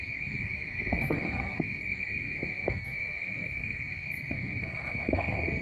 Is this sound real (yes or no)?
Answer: no